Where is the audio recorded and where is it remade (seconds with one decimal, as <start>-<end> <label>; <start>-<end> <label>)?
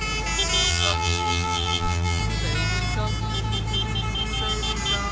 0.0-0.7 recorded; 0.7-2.2 remade; 2.2-5.1 recorded